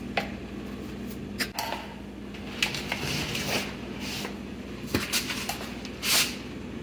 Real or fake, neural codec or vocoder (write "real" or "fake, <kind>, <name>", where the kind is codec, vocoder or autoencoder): real